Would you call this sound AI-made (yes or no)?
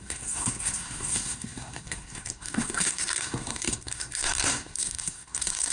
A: yes